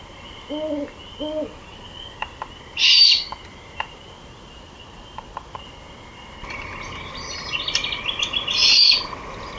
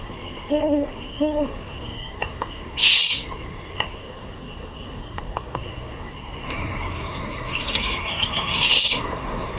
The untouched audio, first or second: first